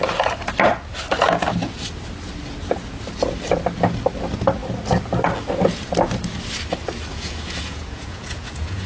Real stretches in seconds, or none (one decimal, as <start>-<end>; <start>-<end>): 0.0-7.1

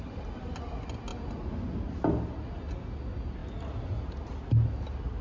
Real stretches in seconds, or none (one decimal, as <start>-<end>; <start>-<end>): 0.0-5.2

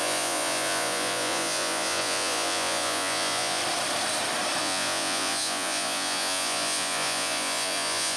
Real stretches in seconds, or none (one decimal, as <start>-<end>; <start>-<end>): 3.6-4.6

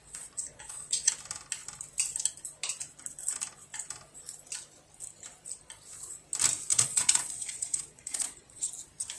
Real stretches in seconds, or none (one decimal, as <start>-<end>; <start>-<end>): 1.1-6.7; 8.7-9.2